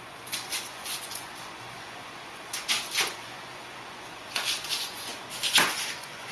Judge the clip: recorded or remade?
remade